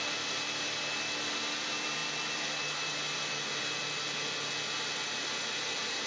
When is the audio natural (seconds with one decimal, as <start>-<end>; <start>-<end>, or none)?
0.0-6.1